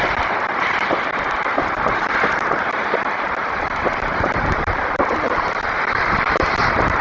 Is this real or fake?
fake